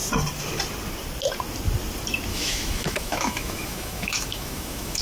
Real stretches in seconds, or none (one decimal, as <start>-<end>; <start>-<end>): 0.0-2.3